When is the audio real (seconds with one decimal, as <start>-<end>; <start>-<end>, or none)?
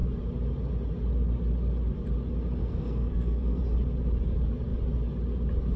0.0-2.6; 3.6-5.8